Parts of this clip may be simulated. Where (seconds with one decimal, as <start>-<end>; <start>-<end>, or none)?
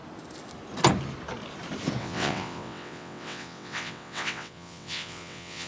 2.0-5.7